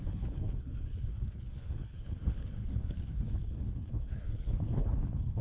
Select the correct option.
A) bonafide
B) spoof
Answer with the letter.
B